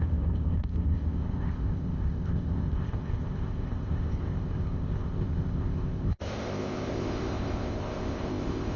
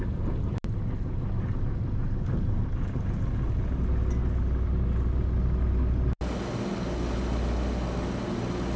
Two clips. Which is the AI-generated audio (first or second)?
first